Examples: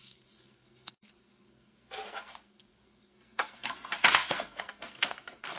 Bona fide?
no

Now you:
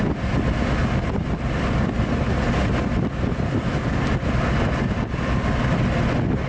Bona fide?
yes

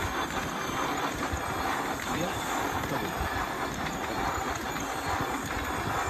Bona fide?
yes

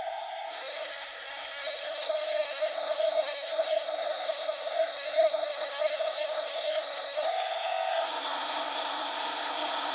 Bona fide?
no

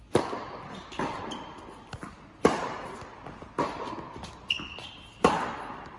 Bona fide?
yes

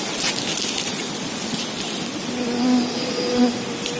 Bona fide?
yes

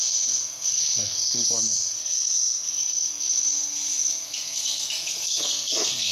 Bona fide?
no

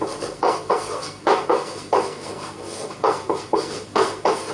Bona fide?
no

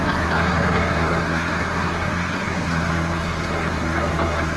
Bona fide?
no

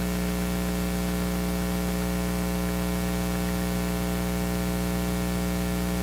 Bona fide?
yes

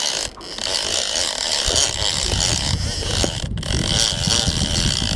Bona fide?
yes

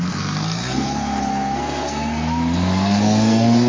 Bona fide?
no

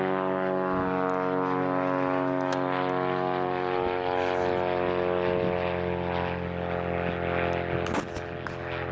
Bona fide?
yes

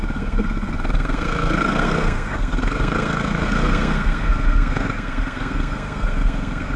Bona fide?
no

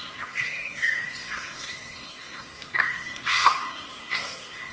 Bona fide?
no